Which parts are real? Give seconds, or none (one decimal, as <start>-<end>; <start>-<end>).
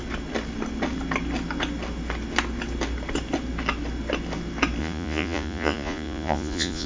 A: 0.0-4.8